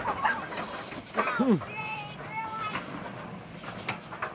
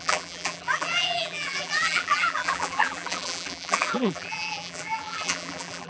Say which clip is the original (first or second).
first